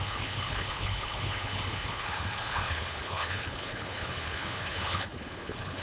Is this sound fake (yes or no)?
yes